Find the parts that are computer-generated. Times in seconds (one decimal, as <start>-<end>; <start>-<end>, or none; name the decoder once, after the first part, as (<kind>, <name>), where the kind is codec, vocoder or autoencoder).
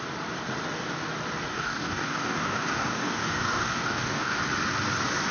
1.5-4.4 (codec, DAC)